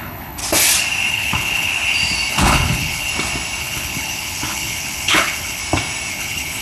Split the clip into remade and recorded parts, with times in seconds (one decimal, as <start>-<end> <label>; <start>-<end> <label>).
0.0-0.4 remade; 0.4-1.1 recorded; 1.1-1.7 remade; 1.7-2.3 recorded; 2.3-3.1 remade; 3.1-3.6 recorded; 3.6-5.6 remade; 5.6-6.1 recorded; 6.1-6.6 remade